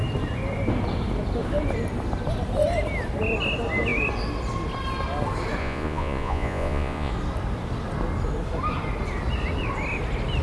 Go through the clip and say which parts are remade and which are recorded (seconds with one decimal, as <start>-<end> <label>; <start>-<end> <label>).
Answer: 0.0-5.6 recorded; 5.6-7.1 remade; 7.1-10.4 recorded